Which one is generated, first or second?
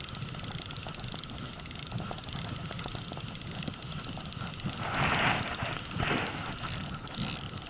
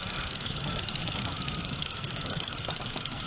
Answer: second